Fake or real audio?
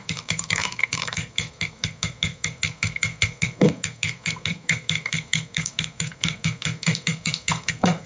fake